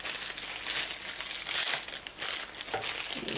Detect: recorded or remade recorded